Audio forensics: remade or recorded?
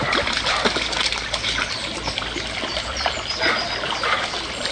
recorded